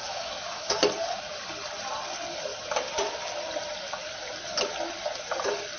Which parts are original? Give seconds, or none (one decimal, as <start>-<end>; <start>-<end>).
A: 0.8-5.8